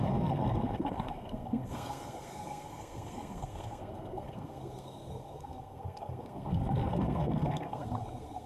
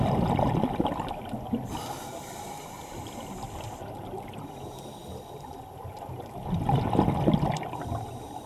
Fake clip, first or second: first